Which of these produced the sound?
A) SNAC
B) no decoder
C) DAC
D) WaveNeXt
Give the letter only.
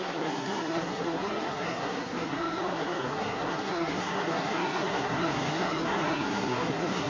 A